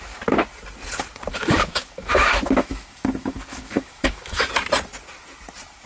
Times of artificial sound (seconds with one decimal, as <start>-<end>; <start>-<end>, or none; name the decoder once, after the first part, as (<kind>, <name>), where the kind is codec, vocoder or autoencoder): 1.3-4.5 (autoencoder, DAC-VAE)

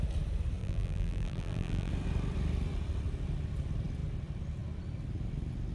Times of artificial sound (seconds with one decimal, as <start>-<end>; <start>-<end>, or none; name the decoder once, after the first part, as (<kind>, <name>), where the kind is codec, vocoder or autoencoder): 0.6-1.9 (vocoder, BigVGAN v2)

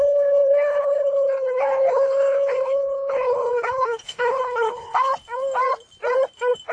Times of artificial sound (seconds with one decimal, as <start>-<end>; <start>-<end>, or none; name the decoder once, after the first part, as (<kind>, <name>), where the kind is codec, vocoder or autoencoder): 0.0-5.1 (codec, HILCodec)

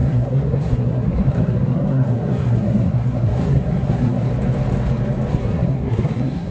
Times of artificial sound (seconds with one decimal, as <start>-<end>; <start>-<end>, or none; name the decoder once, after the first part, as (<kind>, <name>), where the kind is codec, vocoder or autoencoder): 0.0-4.3 (codec, SNAC); 5.3-6.5

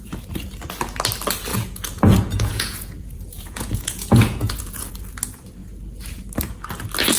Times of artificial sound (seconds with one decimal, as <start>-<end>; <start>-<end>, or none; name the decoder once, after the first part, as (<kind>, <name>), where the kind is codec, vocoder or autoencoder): 1.5-4.9 (vocoder, Vocos)

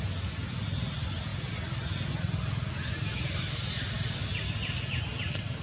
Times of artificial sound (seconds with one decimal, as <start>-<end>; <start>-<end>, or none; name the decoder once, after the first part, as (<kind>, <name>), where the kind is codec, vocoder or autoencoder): none

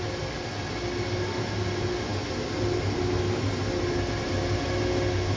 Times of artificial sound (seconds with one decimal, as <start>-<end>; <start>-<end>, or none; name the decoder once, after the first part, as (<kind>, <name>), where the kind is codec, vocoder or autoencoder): none

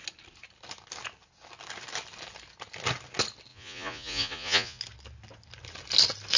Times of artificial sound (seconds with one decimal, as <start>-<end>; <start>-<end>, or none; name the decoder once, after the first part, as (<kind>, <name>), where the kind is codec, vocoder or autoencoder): 3.5-4.8 (vocoder, Vocos)